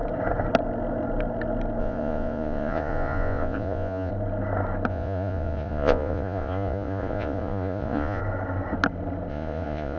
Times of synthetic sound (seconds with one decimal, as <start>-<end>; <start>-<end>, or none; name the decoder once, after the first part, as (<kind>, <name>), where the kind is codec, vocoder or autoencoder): 1.8-4.1 (vocoder, Vocos); 4.9-8.2; 9.3-10.0

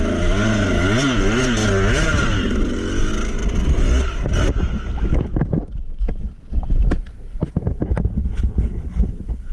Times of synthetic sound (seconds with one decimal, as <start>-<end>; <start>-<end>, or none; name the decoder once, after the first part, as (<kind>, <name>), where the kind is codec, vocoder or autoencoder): 3.4-4.5 (vocoder, BigVGAN v2); 8.2-9.1

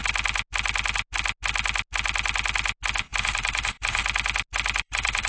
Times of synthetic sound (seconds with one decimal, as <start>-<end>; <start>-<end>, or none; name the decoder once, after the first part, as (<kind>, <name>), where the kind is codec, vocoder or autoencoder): 3.2-4.0 (vocoder, BigVGAN v2); 4.8-5.3

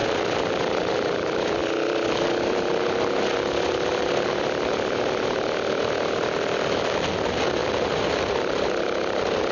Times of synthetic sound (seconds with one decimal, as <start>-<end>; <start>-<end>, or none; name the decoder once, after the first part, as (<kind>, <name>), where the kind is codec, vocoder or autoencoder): 0.0-0.9 (vocoder, BigVGAN v2)

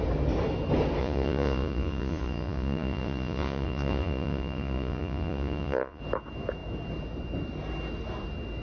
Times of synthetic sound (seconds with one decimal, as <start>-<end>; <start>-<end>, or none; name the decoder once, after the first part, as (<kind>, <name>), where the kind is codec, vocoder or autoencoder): 1.0-6.0 (vocoder, Vocos)

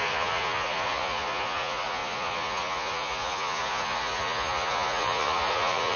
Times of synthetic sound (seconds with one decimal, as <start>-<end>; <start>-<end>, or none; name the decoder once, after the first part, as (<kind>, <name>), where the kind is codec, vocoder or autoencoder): 0.0-6.0 (vocoder, Vocos)